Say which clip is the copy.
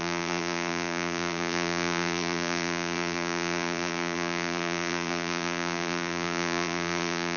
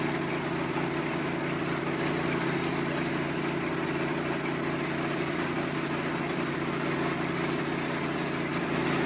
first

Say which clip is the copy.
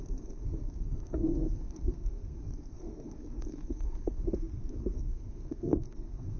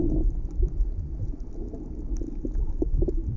first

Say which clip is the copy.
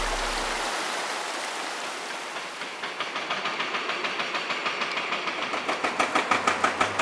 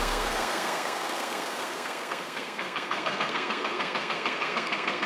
second